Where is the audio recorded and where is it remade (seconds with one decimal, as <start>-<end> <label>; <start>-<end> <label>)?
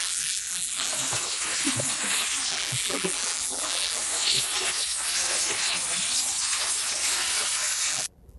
0.0-0.9 remade; 0.9-2.5 recorded; 2.5-4.0 remade; 4.0-7.9 recorded; 7.9-8.4 remade